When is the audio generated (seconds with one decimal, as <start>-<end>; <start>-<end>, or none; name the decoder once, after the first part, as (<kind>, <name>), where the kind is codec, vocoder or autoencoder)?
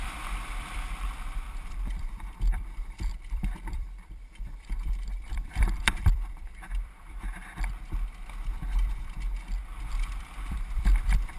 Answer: 0.0-7.4 (vocoder, BigVGAN v2); 9.6-11.4